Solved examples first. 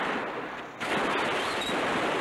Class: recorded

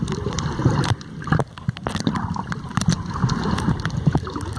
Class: recorded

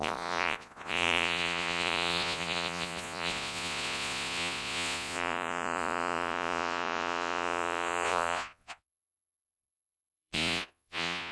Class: remade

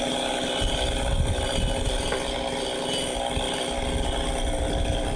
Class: recorded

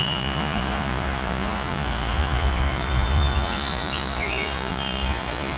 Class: remade